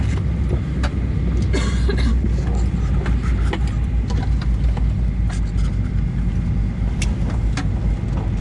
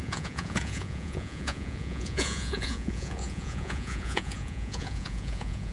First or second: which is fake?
second